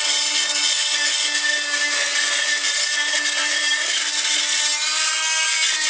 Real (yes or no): yes